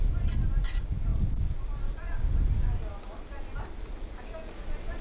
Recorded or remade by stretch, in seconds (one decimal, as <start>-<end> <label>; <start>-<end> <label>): 0.0-5.0 recorded